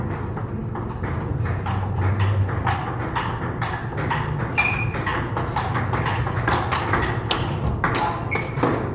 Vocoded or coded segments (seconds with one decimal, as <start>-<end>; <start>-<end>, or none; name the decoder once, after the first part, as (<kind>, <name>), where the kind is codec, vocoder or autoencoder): none